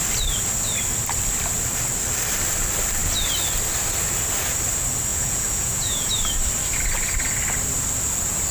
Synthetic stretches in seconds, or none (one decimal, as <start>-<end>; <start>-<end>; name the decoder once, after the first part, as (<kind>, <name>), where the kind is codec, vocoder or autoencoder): 5.1-6.1 (vocoder, Vocos)